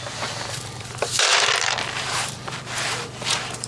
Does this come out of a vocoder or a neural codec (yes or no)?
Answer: yes